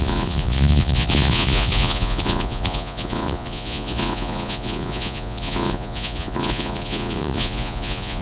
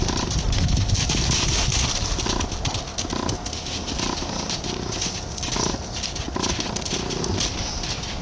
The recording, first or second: second